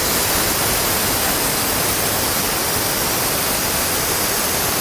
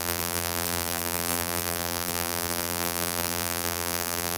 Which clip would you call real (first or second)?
first